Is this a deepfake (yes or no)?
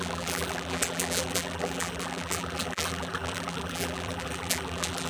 yes